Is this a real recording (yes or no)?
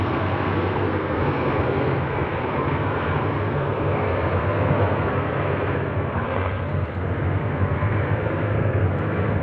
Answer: no